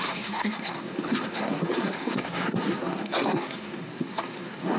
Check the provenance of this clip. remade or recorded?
remade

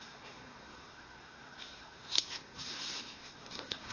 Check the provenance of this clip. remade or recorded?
remade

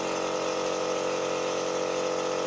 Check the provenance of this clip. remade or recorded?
recorded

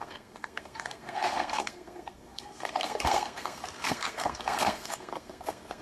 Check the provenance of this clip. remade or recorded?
remade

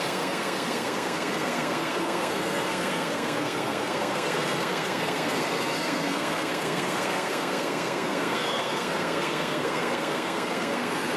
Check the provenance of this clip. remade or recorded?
remade